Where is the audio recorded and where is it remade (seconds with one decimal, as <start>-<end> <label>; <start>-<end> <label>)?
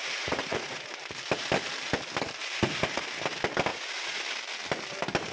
0.0-0.9 remade; 0.9-3.7 recorded; 3.7-4.2 remade; 4.2-5.3 recorded